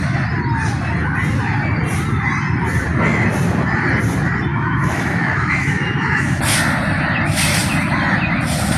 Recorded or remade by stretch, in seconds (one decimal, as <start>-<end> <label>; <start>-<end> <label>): 0.0-4.5 recorded; 4.5-6.4 remade; 6.4-8.8 recorded